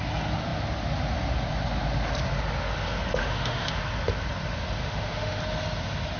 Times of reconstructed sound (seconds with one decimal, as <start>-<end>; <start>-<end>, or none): 3.2-3.7; 4.8-5.4